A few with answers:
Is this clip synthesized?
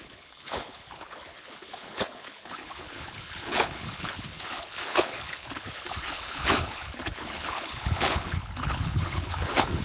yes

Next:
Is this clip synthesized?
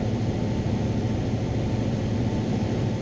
no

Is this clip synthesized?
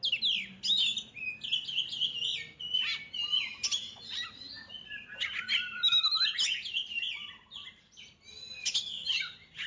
no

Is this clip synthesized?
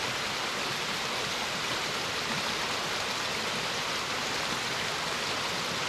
yes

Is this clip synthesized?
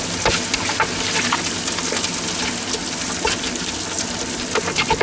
no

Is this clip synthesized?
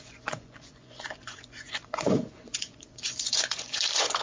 yes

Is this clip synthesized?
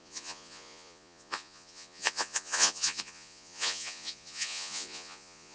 yes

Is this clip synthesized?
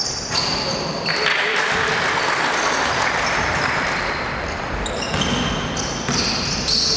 no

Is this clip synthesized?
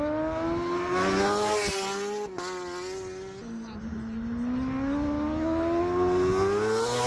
no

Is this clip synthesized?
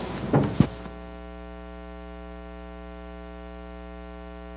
no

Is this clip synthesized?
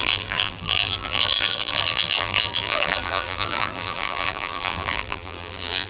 yes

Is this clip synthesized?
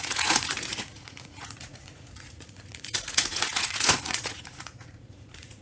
yes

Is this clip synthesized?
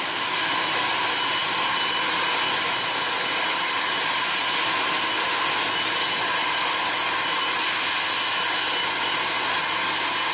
no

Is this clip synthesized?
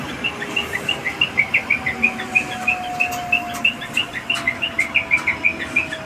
no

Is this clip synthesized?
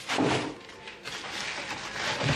no